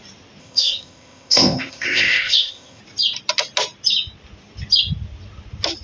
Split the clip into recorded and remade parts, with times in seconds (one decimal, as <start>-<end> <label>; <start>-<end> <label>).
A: 0.0-0.4 recorded; 0.4-2.8 remade; 2.8-5.8 recorded